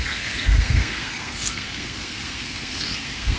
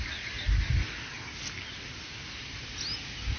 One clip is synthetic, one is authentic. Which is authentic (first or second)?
second